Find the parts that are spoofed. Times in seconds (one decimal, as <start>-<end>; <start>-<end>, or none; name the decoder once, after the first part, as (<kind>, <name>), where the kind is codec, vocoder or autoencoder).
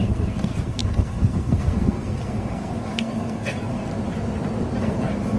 0.0-3.9 (codec, SNAC); 4.8-5.4